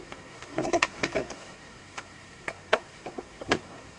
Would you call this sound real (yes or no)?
no